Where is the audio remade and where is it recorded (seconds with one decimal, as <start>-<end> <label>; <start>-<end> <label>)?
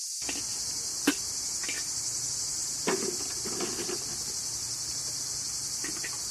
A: 0.0-6.3 recorded